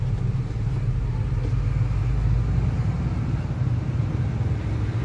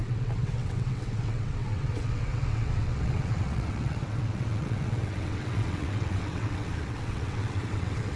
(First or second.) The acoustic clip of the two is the first